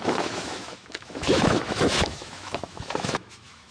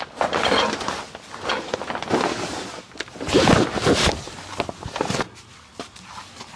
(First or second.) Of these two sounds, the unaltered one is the second